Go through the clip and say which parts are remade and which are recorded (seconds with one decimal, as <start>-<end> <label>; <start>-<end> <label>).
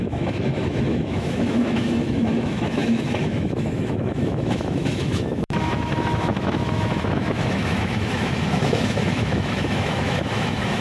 0.0-10.8 remade